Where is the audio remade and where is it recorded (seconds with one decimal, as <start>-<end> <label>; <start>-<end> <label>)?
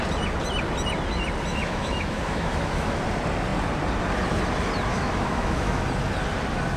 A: 0.0-1.5 recorded; 1.5-3.0 remade; 3.0-4.9 recorded; 4.9-5.8 remade; 5.8-6.8 recorded